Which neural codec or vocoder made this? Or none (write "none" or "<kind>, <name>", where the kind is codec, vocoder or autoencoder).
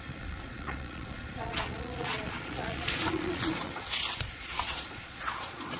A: vocoder, Vocos